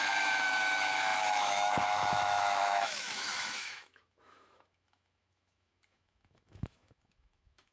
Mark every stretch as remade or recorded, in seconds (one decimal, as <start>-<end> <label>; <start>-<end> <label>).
0.0-7.7 remade